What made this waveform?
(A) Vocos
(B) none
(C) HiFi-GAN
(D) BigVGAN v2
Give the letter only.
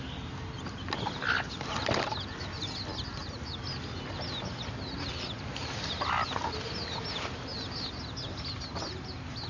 B